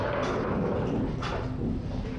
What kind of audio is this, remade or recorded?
recorded